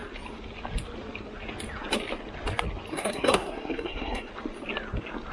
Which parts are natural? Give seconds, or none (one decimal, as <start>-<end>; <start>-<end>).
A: 0.0-2.9; 4.3-5.3